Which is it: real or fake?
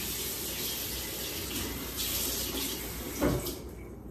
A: real